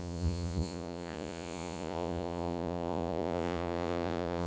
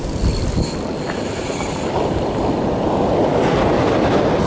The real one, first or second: second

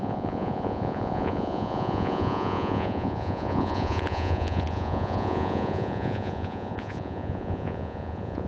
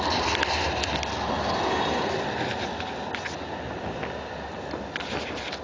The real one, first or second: second